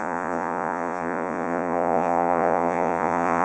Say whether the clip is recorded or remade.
remade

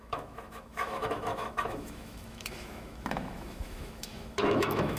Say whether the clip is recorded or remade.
remade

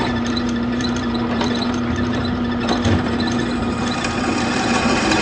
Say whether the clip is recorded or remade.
remade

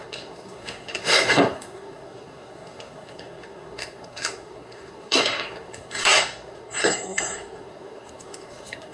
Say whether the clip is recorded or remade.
remade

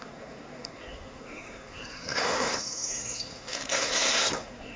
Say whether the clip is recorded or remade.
remade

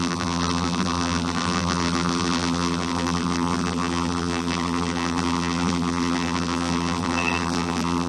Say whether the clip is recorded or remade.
remade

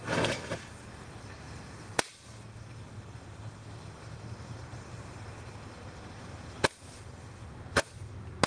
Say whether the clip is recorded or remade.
recorded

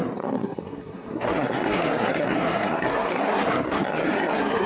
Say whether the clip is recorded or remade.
remade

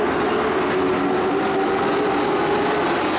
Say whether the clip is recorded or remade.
recorded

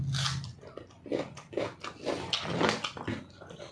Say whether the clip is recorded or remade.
recorded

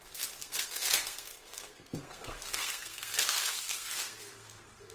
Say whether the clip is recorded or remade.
remade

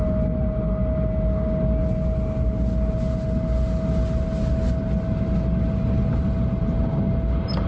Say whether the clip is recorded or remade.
recorded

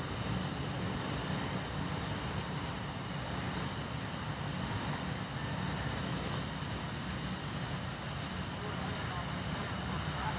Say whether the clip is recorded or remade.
recorded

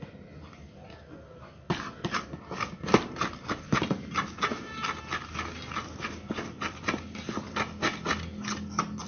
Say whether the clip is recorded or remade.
recorded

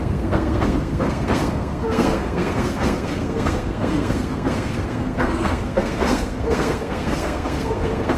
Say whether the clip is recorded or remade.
remade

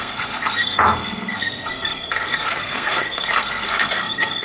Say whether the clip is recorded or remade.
remade